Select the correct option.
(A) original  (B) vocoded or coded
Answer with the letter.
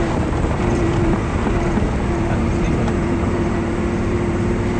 B